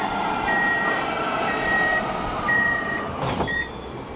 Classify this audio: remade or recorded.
recorded